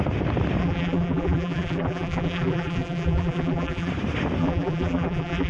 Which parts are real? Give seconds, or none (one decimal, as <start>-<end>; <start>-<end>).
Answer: 0.0-0.6; 3.9-4.4

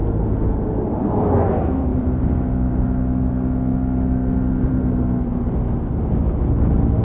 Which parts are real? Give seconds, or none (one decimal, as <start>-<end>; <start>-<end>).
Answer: 0.7-1.9; 3.3-3.7; 4.9-7.0

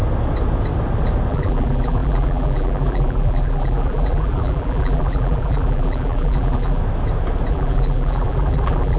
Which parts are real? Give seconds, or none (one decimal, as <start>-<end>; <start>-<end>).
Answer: 0.0-1.3; 6.8-7.5

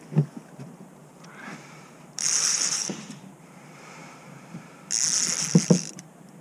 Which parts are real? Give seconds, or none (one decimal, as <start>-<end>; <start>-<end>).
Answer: 0.0-1.0; 4.8-6.4

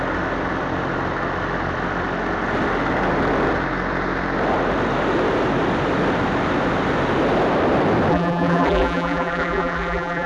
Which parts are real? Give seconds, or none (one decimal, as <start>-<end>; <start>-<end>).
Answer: 0.0-8.1